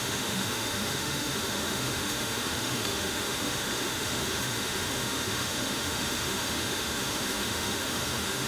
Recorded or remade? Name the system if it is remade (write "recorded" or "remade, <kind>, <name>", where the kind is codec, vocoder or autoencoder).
remade, autoencoder, DAC-VAE